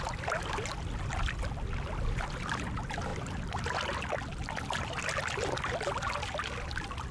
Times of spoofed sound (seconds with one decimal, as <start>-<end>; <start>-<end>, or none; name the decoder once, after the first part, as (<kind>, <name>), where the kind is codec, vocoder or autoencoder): none